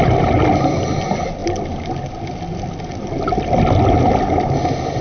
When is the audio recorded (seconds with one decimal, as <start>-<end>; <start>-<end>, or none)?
0.0-5.0